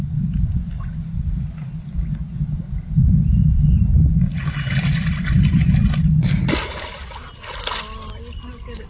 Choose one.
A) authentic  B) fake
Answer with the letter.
A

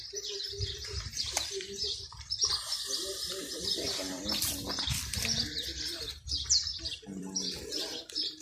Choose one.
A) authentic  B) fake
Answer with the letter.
B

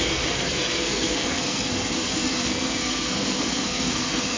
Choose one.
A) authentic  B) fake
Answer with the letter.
B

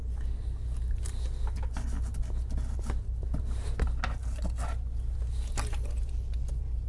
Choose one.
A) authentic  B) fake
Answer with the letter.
A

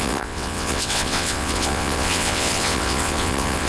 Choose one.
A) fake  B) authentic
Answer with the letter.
A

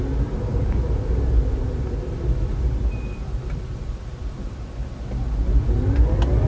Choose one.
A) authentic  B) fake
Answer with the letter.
A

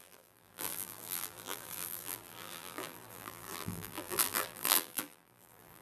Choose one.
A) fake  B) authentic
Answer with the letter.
A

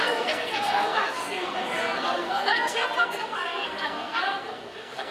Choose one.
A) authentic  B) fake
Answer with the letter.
B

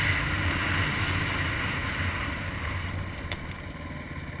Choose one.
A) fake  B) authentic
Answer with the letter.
B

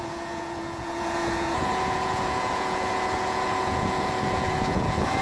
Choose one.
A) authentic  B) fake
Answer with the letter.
B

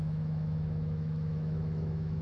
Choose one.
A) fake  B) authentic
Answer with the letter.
A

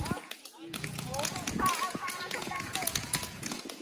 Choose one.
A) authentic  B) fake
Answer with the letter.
B